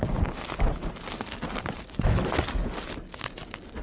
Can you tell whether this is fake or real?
real